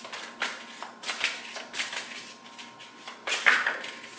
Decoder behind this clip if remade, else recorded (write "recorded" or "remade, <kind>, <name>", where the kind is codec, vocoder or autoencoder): recorded